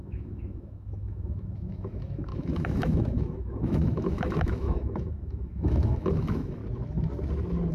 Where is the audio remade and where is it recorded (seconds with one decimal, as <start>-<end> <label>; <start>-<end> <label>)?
0.0-6.6 remade; 6.6-7.7 recorded